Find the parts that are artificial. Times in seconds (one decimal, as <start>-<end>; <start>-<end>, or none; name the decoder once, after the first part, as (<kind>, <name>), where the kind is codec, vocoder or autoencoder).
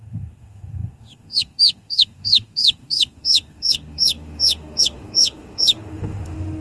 0.0-6.6 (autoencoder, DAC-VAE)